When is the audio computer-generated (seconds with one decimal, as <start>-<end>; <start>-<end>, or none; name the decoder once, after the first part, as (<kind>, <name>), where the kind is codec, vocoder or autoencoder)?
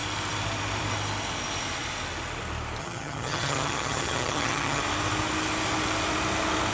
2.8-4.8 (vocoder, HiFi-GAN)